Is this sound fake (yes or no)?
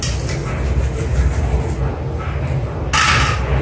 no